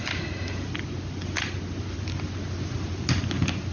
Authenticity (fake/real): real